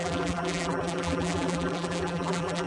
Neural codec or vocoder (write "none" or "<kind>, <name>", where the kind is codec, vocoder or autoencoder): vocoder, BigVGAN v2